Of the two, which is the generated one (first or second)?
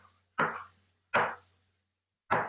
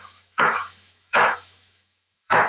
second